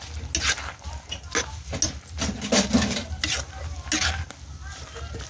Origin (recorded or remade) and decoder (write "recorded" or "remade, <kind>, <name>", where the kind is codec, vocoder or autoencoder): recorded